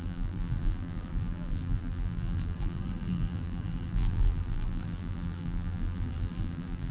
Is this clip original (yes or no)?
no